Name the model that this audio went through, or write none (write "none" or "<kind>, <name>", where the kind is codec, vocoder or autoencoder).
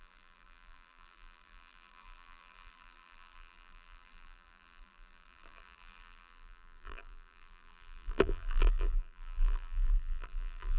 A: vocoder, BigVGAN v2